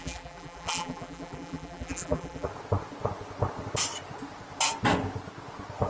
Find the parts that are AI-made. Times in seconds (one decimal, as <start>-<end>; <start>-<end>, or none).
0.0-2.5